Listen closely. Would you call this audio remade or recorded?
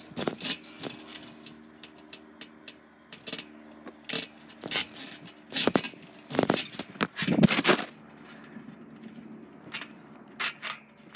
recorded